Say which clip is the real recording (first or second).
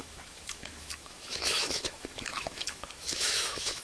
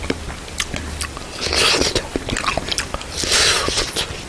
second